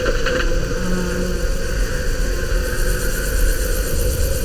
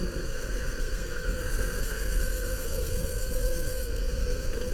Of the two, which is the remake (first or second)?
second